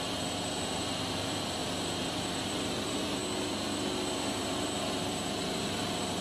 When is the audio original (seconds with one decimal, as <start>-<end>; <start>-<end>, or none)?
3.2-5.0